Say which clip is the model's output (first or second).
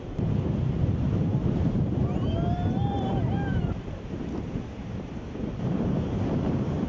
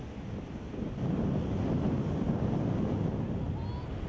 first